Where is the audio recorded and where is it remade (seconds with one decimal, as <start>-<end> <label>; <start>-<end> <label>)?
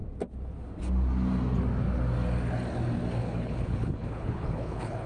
0.0-3.2 recorded; 3.2-5.1 remade